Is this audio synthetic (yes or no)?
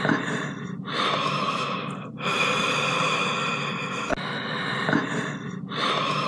no